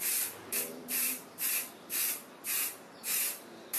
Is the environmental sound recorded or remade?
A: remade